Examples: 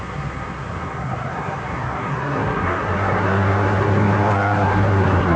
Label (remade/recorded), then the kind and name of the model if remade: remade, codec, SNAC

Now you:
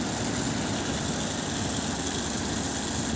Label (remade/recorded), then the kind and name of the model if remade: recorded